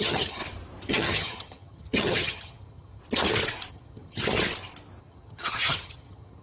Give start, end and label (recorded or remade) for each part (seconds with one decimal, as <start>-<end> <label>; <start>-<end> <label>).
0.0-0.4 remade; 0.4-0.9 recorded; 0.9-3.0 remade; 3.0-3.7 recorded; 3.7-4.2 remade; 4.2-5.0 recorded; 5.0-6.4 remade

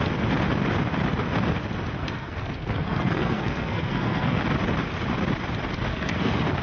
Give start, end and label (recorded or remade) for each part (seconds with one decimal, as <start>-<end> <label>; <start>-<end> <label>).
0.0-2.0 recorded; 2.0-4.4 remade; 4.4-5.9 recorded; 5.9-6.6 remade